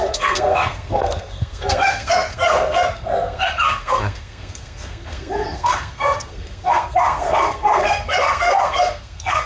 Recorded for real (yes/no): no